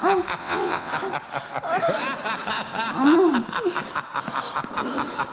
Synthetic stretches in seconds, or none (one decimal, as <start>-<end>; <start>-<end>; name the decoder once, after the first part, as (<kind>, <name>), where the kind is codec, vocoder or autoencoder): 0.4-0.9 (vocoder, WaveNeXt)